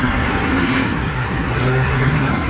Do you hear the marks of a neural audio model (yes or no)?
yes